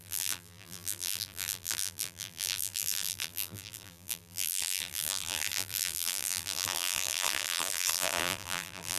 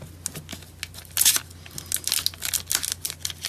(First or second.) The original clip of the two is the second